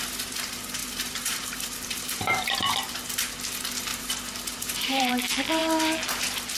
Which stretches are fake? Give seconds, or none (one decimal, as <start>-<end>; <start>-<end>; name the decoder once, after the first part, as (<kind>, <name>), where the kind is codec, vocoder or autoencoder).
0.8-3.3 (vocoder, BigVGAN v2); 3.9-5.1